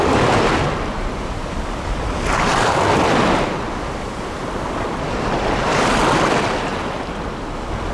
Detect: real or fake real